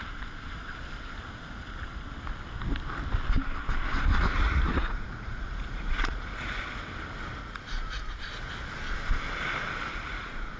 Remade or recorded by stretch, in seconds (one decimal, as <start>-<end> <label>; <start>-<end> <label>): 0.0-4.1 recorded; 4.1-6.6 remade; 6.6-7.4 recorded; 7.4-8.3 remade; 8.3-9.9 recorded; 9.9-10.6 remade